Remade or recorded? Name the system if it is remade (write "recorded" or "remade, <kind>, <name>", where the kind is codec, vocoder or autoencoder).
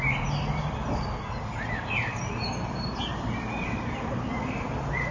recorded